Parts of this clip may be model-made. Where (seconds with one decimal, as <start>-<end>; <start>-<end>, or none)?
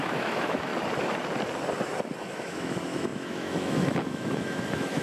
0.0-0.7; 2.2-5.0